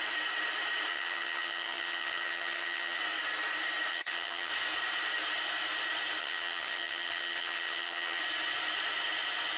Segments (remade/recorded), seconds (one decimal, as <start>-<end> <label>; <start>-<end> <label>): 0.0-0.9 recorded; 0.9-3.0 remade; 3.0-3.9 recorded; 3.9-4.5 remade; 4.5-6.2 recorded; 6.2-8.2 remade; 8.2-9.6 recorded